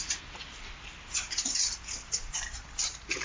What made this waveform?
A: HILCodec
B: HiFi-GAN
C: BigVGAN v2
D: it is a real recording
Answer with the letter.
D